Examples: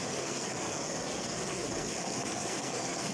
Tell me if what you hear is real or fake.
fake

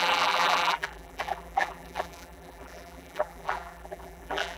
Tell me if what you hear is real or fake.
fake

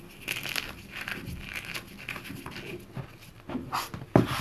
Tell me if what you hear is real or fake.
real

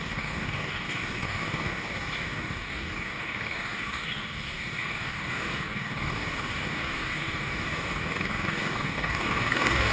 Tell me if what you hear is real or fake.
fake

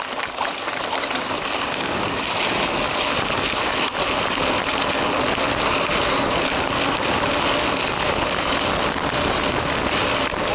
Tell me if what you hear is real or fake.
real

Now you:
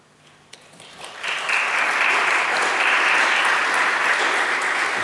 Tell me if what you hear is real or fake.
real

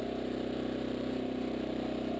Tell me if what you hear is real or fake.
fake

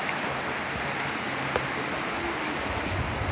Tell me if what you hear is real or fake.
real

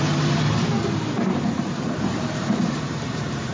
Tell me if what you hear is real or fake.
fake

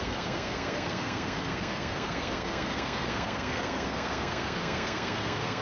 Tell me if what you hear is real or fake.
fake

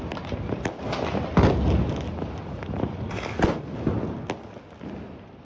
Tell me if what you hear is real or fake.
real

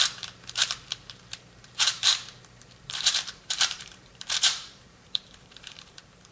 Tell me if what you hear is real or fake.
fake